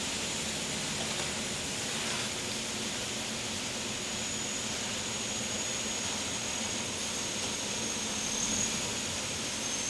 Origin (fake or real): real